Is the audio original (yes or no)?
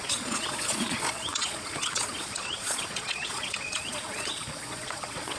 no